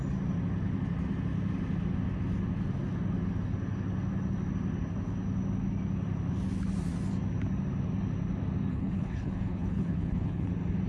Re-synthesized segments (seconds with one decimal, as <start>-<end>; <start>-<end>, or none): 8.7-10.5